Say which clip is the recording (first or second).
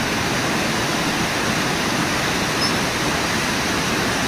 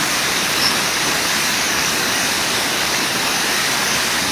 first